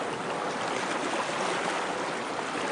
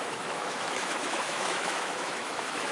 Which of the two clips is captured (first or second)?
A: first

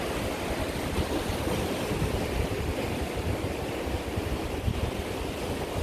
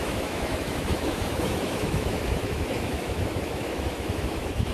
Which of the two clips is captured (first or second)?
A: first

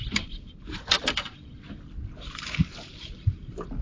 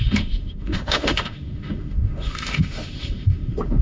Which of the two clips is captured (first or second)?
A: first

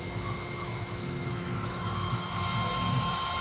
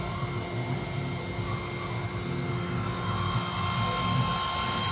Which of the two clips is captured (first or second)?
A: second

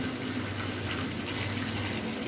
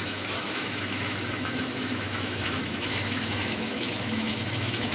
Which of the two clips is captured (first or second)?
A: first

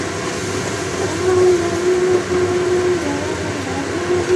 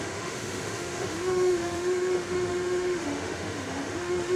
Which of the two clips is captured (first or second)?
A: first